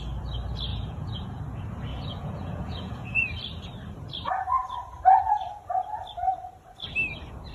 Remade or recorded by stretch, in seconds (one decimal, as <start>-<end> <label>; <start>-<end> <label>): 0.0-0.7 recorded; 0.7-1.4 remade; 1.4-1.9 recorded; 1.9-3.2 remade; 3.2-7.5 recorded